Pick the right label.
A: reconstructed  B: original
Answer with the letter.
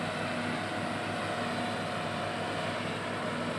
B